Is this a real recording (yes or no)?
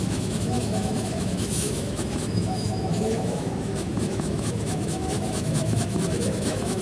no